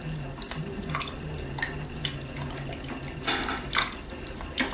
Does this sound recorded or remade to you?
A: recorded